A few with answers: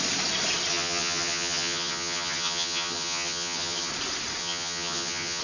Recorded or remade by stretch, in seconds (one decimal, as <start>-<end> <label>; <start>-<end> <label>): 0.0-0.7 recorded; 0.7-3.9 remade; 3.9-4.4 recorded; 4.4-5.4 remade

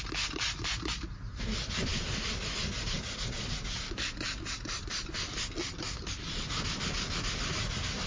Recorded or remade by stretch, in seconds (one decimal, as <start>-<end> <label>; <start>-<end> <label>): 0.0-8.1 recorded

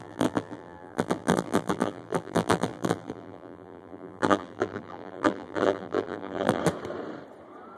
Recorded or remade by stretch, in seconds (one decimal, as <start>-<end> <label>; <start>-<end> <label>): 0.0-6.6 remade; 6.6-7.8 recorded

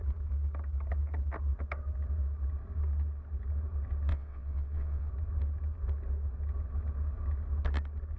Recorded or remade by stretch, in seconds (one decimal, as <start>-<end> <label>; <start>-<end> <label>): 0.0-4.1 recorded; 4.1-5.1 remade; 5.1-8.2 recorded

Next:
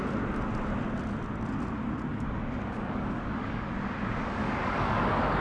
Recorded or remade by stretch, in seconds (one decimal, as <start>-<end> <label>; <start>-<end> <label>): 0.0-2.1 recorded; 2.1-3.7 remade; 3.7-4.4 recorded; 4.4-5.4 remade

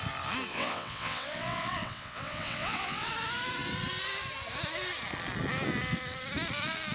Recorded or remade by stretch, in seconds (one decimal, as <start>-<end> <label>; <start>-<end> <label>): 0.0-0.5 recorded; 0.5-3.1 remade; 3.1-6.9 recorded

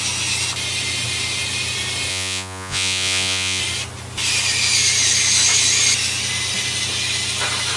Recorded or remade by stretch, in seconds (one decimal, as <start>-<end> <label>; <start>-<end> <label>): 0.0-2.1 recorded; 2.1-3.6 remade; 3.6-7.8 recorded